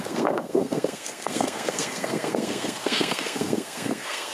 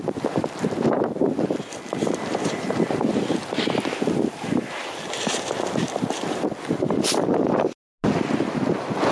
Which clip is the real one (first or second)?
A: second